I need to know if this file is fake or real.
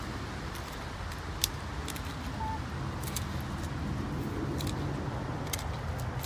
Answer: real